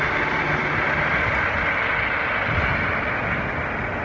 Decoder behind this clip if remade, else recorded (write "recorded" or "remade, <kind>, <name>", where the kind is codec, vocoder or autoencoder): recorded